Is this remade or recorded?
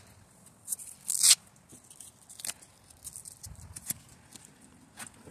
recorded